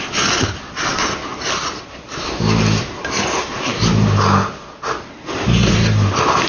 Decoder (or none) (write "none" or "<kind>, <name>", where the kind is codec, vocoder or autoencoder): none